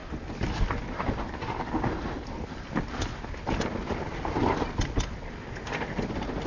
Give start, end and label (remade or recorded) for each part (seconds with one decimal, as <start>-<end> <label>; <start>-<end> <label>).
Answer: 0.0-3.9 recorded; 3.9-4.4 remade; 4.4-5.5 recorded; 5.5-6.5 remade